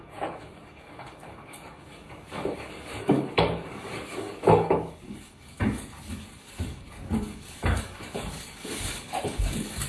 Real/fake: fake